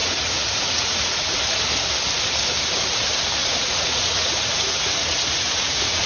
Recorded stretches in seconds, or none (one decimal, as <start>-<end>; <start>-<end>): 1.4-3.4